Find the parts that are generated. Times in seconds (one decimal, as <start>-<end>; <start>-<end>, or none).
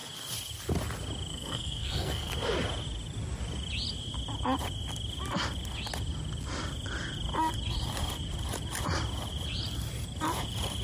1.3-2.3